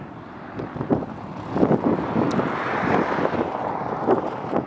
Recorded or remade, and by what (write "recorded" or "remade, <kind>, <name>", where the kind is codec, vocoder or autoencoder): recorded